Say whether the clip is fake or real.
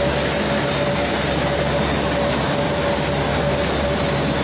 real